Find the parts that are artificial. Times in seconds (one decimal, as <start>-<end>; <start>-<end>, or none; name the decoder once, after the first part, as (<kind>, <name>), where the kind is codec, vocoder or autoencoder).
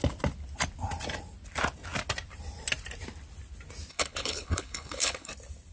3.9-5.3 (codec, HILCodec)